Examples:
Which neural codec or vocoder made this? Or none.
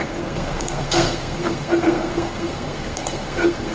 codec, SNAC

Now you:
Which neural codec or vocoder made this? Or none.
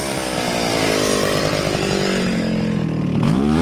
none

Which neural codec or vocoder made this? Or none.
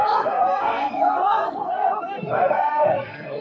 codec, SNAC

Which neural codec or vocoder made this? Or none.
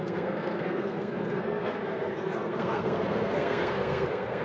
codec, SNAC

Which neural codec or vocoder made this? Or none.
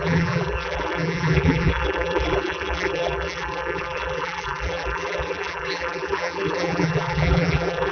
vocoder, BigVGAN v2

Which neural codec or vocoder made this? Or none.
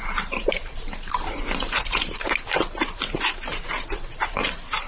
vocoder, BigVGAN v2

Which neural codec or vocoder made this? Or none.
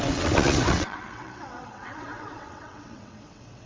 vocoder, WaveNeXt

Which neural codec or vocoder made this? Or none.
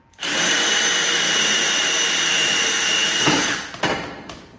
vocoder, BigVGAN v2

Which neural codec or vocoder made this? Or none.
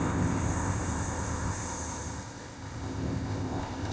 codec, ZipCodec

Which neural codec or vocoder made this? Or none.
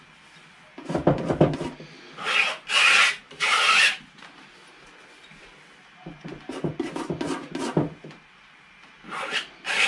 none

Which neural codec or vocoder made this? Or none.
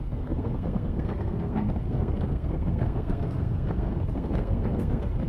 codec, SNAC